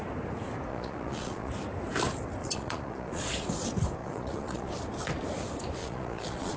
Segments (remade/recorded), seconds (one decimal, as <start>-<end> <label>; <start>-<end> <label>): 0.0-0.7 recorded; 0.7-1.5 remade; 1.5-2.4 recorded; 2.4-3.3 remade; 3.3-4.0 recorded; 4.0-4.7 remade; 4.7-5.8 recorded; 5.8-6.6 remade